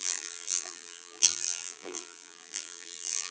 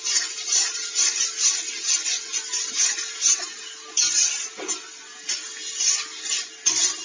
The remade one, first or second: first